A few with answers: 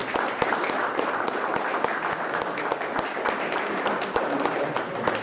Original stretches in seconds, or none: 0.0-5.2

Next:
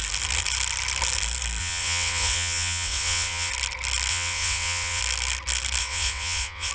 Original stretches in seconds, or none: 0.0-1.6; 3.5-4.1; 5.0-5.8

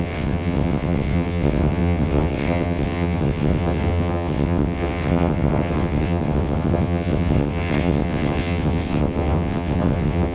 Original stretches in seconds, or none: none

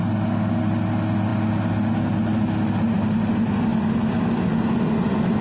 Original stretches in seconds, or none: 0.0-5.4

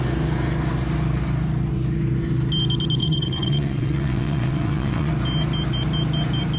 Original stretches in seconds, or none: 0.0-3.0; 5.1-6.6

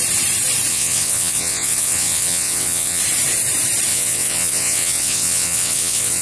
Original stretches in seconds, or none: 0.0-0.7; 3.0-3.9